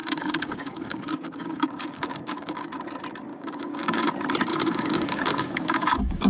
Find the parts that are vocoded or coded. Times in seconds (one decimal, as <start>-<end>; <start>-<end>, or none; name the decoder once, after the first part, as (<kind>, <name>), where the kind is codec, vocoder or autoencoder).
0.0-2.7 (codec, DAC); 3.3-4.1; 4.5-6.3